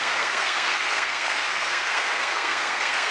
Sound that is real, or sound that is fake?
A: fake